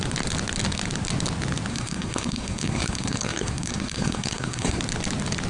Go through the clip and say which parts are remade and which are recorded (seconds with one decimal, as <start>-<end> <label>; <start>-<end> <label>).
0.0-1.7 recorded; 1.7-4.8 remade; 4.8-5.5 recorded